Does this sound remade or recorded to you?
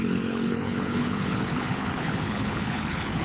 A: remade